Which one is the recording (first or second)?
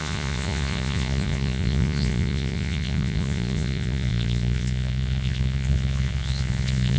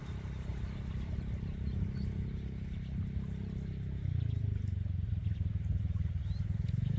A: second